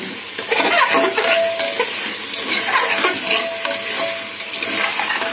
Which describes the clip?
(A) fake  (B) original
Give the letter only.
B